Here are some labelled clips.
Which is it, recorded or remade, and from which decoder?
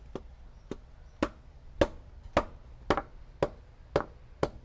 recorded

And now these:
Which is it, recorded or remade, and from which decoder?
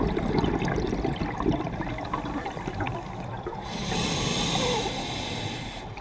recorded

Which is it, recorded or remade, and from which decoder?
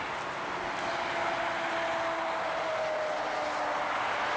recorded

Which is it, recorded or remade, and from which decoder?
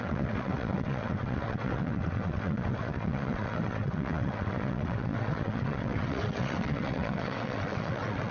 remade, vocoder, WaveNeXt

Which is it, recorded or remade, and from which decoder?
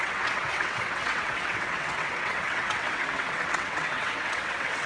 remade, vocoder, WaveNeXt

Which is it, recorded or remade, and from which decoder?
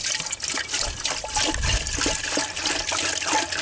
recorded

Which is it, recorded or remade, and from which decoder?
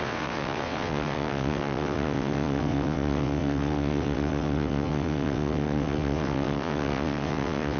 remade, vocoder, WaveNeXt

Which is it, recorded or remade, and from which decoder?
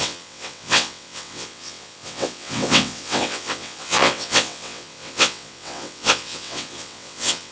remade, vocoder, WaveNeXt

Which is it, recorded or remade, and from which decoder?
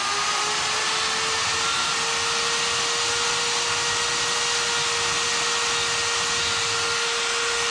recorded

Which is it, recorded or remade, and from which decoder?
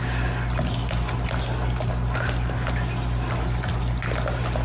recorded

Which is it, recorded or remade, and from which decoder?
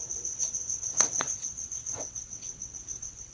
remade, vocoder, WaveNeXt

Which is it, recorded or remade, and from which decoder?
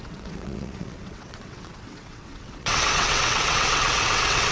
remade, vocoder, WaveNeXt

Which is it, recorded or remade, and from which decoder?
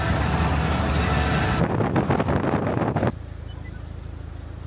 recorded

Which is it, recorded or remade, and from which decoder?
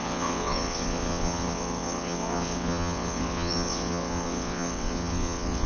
remade, vocoder, WaveNeXt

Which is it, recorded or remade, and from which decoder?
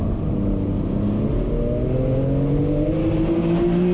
recorded